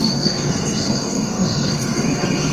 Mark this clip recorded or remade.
remade